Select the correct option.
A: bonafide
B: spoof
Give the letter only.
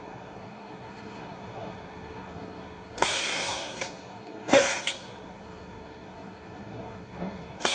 B